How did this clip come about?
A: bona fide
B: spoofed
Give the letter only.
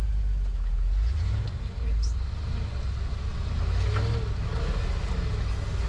A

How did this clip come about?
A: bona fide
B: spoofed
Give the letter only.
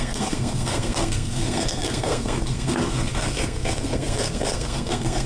B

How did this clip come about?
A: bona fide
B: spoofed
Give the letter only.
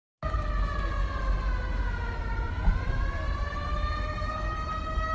A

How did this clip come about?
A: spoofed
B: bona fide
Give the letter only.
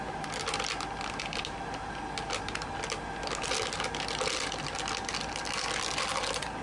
B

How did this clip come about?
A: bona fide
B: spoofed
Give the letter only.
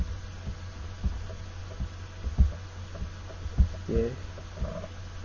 A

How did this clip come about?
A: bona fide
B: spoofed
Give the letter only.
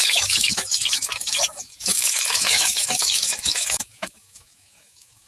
B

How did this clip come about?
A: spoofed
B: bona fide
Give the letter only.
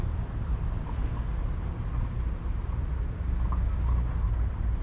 B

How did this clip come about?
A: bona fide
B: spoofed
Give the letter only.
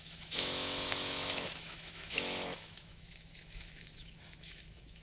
B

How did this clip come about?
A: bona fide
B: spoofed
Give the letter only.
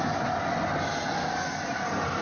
A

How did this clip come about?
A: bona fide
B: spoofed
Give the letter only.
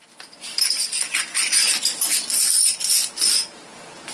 B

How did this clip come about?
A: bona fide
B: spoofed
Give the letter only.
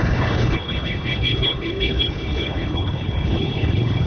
B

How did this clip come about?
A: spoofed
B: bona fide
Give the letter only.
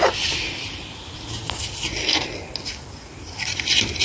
B